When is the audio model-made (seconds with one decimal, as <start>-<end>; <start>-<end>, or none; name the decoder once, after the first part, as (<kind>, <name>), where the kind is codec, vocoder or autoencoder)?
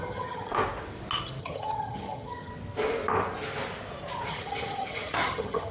0.0-0.5 (vocoder, HiFi-GAN); 1.4-2.5; 4.3-5.7